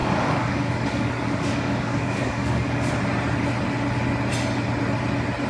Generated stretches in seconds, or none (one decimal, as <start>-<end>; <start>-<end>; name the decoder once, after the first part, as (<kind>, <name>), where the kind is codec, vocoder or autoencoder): 0.0-2.9 (codec, DAC)